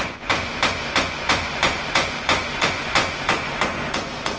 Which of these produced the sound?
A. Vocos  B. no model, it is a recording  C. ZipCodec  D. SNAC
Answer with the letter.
A